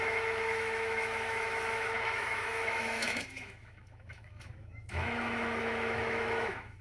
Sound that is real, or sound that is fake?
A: fake